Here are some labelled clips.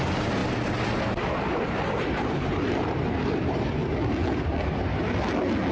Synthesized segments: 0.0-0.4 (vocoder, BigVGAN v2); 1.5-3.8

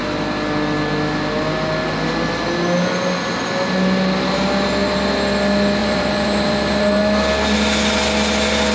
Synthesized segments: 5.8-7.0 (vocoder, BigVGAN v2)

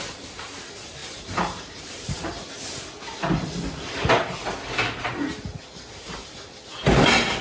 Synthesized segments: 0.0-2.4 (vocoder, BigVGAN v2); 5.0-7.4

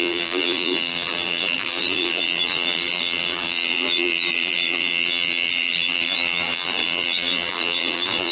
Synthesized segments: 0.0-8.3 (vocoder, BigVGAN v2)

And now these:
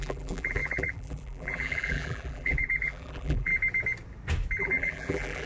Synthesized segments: 0.0-3.5 (vocoder, BigVGAN v2); 4.6-5.5

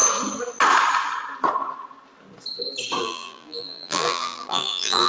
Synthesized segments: 3.0-5.1 (vocoder, BigVGAN v2)